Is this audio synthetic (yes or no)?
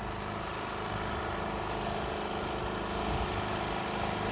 no